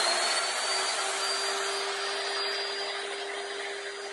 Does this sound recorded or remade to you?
recorded